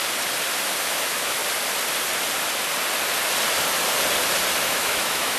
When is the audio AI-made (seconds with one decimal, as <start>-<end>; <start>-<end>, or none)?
0.8-1.4; 4.6-5.4